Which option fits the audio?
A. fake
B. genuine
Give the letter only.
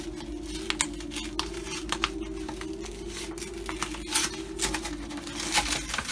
B